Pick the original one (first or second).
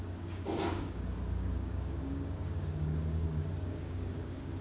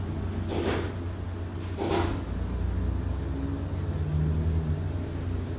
second